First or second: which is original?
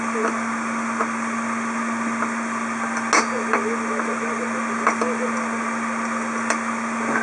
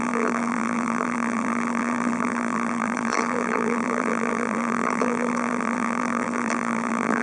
first